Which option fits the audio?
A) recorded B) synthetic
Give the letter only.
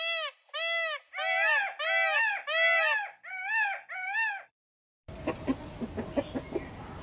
A